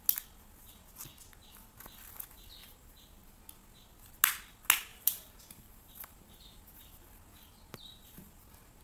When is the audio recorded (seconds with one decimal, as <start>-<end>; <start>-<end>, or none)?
0.0-2.6; 3.4-4.9; 6.6-8.8